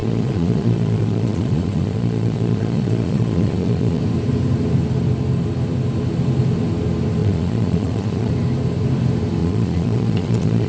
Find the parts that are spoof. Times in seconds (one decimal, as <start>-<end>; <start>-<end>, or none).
0.0-4.0; 7.2-8.3; 9.4-10.7